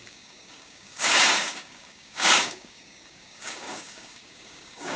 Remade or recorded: remade